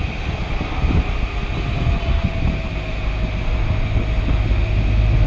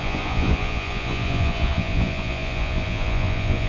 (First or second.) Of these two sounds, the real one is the first